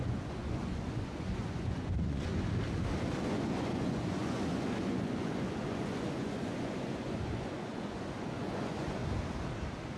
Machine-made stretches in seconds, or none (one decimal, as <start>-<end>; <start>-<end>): 0.0-2.3; 3.2-9.0